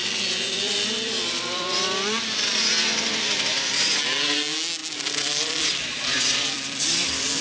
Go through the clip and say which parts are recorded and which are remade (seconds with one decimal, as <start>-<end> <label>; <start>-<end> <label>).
0.0-4.0 remade; 4.0-4.8 recorded; 4.8-7.4 remade